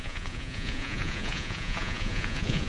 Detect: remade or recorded remade